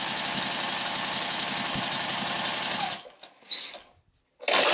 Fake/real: real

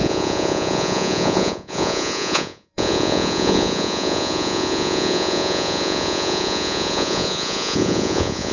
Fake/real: fake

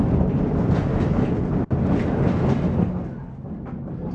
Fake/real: real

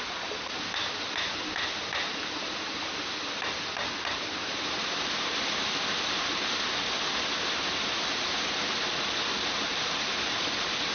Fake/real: real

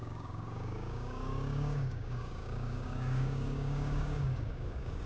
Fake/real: fake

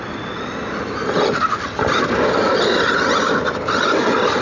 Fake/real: real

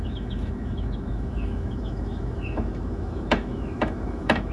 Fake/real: fake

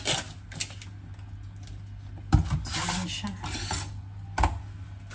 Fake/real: real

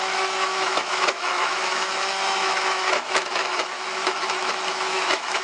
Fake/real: fake